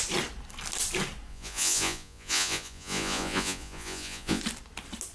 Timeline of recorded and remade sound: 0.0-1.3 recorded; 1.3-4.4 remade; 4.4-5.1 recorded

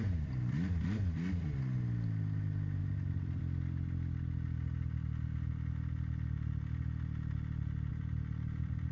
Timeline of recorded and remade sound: 0.0-2.8 recorded; 2.8-3.4 remade; 3.4-7.9 recorded; 7.9-8.9 remade

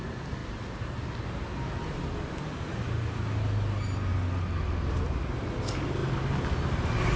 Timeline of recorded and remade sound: 0.0-0.4 recorded; 0.4-1.7 remade; 1.7-7.2 recorded

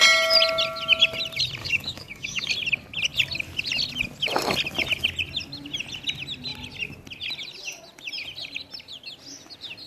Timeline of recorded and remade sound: 0.0-1.6 recorded; 1.6-2.5 remade; 2.5-9.9 recorded